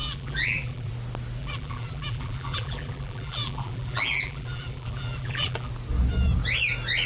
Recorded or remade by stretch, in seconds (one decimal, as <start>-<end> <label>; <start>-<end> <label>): 0.0-0.9 remade; 0.9-1.4 recorded; 1.4-5.7 remade; 5.7-7.1 recorded